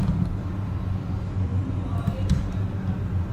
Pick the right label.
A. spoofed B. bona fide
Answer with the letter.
A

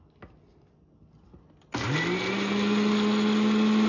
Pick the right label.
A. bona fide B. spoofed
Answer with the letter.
A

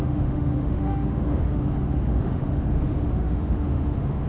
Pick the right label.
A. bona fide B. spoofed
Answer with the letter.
B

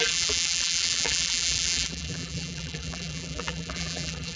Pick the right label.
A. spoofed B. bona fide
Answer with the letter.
A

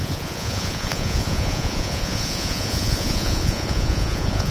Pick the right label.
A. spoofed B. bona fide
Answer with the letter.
A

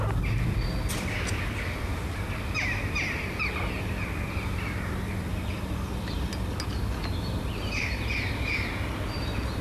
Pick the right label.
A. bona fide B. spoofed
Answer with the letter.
A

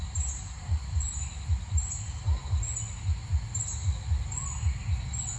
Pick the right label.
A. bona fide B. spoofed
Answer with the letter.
A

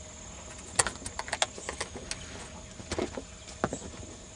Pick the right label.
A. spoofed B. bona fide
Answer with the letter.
B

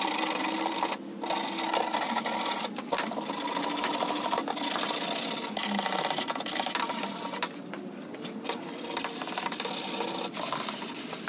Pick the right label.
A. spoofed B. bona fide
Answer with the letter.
B